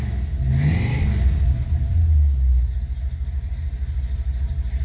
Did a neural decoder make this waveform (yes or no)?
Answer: no